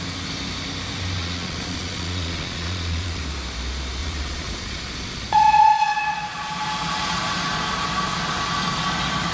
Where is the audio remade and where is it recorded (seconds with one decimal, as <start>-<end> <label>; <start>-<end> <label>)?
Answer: 0.0-1.2 recorded; 1.2-3.2 remade; 3.2-4.0 recorded; 4.0-6.5 remade; 6.5-9.3 recorded